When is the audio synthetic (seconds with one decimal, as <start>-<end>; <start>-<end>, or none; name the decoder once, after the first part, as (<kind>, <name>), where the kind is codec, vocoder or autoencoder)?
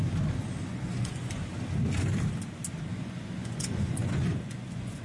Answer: 0.7-1.4 (vocoder, Vocos); 2.9-5.0